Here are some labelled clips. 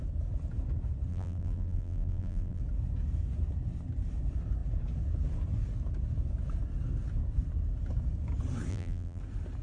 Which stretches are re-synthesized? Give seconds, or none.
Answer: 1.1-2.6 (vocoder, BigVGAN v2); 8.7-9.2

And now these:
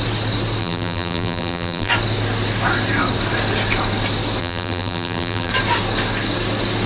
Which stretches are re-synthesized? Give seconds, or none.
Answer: 0.6-1.9 (vocoder, BigVGAN v2); 4.4-5.5

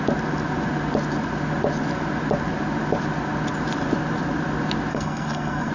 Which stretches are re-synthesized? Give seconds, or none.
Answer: 4.9-5.7 (codec, SNAC)

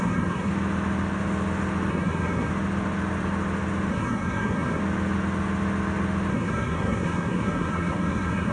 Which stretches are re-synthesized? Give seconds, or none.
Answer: 0.0-0.5 (codec, SNAC); 1.9-2.5; 3.9-4.8; 6.3-8.5

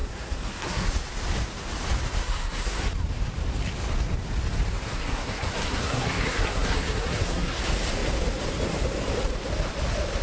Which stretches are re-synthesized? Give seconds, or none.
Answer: 0.0-0.9 (codec, SNAC); 2.2-2.9; 4.9-7.6

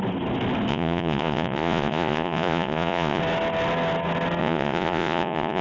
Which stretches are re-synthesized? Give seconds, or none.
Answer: 0.7-3.2 (vocoder, Vocos); 4.4-5.6

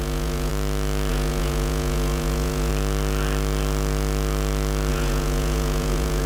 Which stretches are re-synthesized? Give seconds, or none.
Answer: 0.0-0.5 (vocoder, Vocos); 1.1-2.7; 4.9-6.3